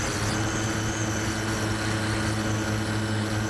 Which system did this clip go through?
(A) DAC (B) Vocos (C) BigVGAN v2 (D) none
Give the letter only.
D